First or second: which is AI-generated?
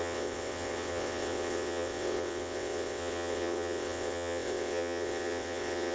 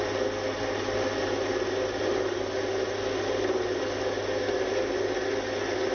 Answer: first